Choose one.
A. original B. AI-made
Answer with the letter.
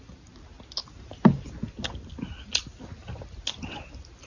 A